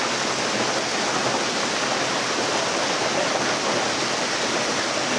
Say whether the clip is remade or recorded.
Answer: recorded